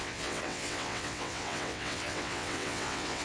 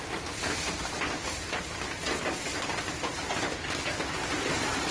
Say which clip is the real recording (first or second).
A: second